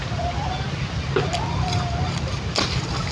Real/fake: real